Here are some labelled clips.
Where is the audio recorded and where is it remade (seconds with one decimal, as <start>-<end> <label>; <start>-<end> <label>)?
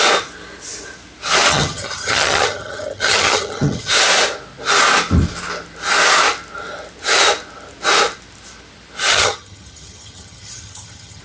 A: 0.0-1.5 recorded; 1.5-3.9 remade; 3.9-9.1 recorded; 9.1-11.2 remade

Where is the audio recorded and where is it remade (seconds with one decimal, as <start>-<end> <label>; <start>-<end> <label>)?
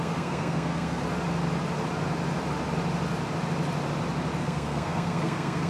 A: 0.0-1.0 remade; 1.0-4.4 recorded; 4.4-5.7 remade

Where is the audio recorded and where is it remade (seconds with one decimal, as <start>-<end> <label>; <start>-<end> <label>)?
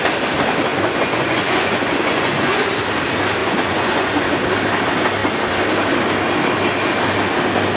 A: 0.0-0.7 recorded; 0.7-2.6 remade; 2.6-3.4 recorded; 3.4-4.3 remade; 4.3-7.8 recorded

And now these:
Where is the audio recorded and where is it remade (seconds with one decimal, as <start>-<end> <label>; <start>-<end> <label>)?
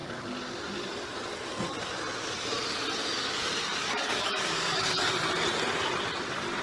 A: 0.0-3.7 recorded; 3.7-5.0 remade; 5.0-6.6 recorded